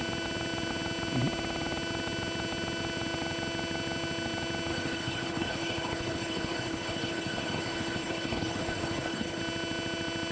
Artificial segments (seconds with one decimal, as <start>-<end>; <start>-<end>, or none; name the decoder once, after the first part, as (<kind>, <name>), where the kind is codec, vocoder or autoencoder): 4.7-9.4 (codec, HILCodec)